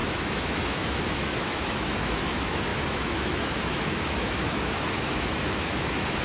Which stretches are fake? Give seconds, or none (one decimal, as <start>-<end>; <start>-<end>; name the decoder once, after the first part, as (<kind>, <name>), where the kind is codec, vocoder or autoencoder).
0.0-6.2 (autoencoder, DAC-VAE)